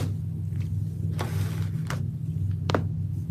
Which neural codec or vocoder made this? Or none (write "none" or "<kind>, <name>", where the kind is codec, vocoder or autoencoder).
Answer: none